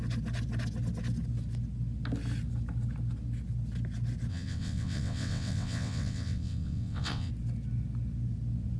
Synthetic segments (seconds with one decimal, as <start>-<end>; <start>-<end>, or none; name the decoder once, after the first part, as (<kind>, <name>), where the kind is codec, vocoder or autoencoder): 4.3-7.3 (vocoder, WaveNeXt)